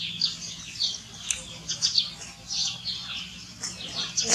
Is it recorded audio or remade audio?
recorded